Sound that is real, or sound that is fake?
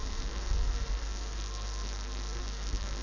fake